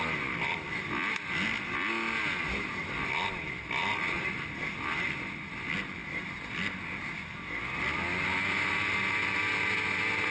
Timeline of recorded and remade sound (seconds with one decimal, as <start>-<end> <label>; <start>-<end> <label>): 0.0-10.3 recorded

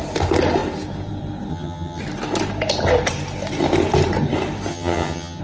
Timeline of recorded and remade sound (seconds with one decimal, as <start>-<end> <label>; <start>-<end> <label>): 0.0-1.5 recorded; 1.5-2.0 remade; 2.0-4.7 recorded; 4.7-5.4 remade

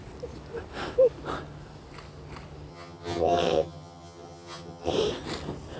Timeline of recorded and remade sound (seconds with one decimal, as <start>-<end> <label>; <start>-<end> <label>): 0.0-2.7 recorded; 2.7-4.9 remade; 4.9-5.8 recorded

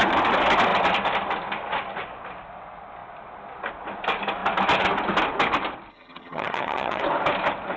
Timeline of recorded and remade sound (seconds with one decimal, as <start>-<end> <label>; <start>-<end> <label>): 0.0-5.9 recorded; 5.9-7.0 remade; 7.0-7.8 recorded